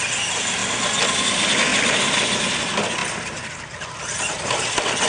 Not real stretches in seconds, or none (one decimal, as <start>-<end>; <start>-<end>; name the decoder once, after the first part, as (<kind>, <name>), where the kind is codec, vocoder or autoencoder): none

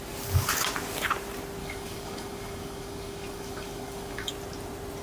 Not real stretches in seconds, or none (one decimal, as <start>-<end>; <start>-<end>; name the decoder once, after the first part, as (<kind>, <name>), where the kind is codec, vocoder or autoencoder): 1.6-4.3 (codec, DAC)

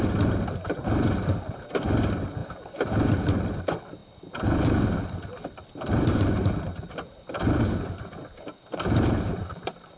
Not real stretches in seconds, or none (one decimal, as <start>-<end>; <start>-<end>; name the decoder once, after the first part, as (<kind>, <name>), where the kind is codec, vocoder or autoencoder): 0.0-10.0 (vocoder, BigVGAN v2)

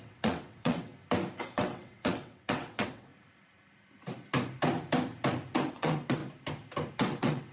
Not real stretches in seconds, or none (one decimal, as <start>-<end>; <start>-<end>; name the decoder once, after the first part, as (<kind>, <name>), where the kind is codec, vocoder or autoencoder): 0.0-0.9 (vocoder, WaveNeXt); 1.4-3.1; 5.7-6.2; 6.9-7.5

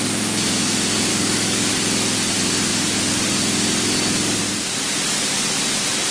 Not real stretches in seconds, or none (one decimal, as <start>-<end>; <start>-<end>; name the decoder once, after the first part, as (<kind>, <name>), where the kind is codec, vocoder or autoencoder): 1.1-1.7 (codec, DAC)